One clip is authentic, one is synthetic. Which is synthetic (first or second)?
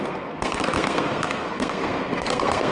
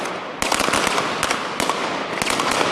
first